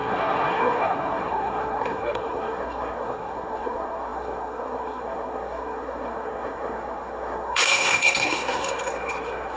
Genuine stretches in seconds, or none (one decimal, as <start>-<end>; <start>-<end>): none